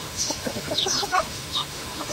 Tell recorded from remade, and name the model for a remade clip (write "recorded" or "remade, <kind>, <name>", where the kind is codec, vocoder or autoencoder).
remade, autoencoder, DAC-VAE